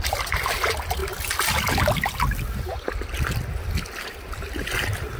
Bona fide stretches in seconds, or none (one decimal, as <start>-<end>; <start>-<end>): 0.0-5.2